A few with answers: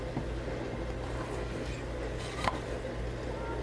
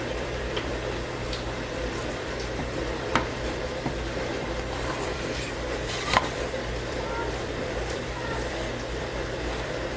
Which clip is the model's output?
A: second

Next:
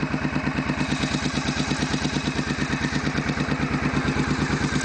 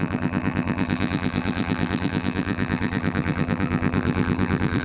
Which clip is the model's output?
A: second